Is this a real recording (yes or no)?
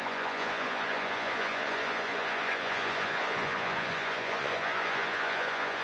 no